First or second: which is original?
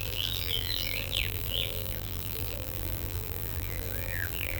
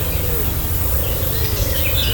second